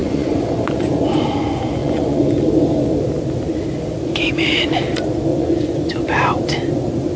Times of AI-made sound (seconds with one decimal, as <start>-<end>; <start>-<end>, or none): 0.0-1.2; 1.8-2.3; 5.3-5.9